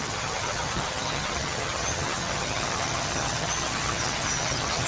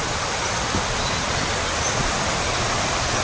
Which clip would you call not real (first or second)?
first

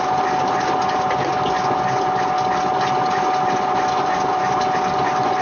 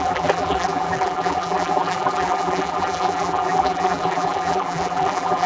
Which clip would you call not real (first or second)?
second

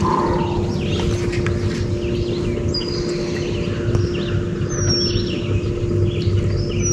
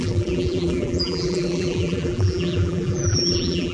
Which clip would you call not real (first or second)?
second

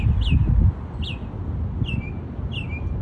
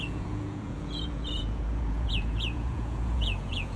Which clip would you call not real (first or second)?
second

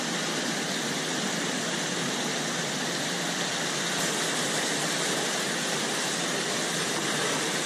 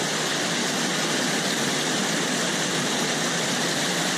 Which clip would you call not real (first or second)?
second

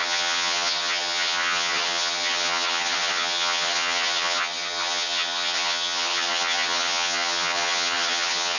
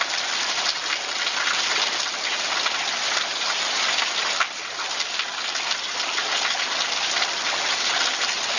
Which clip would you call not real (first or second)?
first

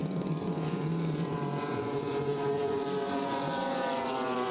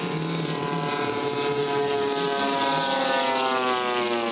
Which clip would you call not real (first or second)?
first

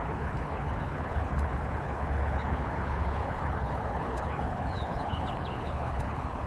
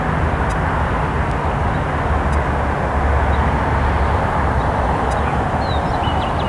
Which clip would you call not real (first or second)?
first